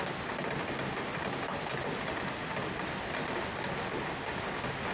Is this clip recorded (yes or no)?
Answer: yes